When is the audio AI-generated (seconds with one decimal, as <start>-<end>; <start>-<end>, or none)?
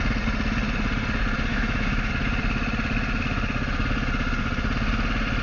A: 1.5-2.1